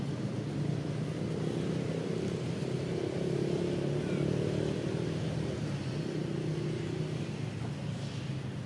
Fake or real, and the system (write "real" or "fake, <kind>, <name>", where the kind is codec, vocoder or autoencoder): real